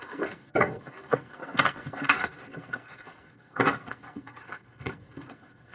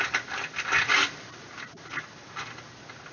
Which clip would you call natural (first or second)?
second